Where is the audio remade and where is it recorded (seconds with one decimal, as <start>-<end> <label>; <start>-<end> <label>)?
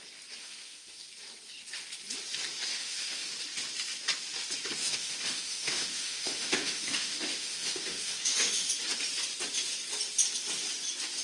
0.0-0.4 recorded; 0.4-1.0 remade; 1.0-2.7 recorded; 2.7-3.3 remade; 3.3-4.8 recorded; 4.8-8.7 remade; 8.7-11.2 recorded